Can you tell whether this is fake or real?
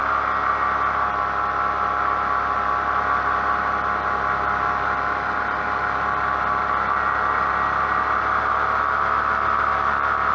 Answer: real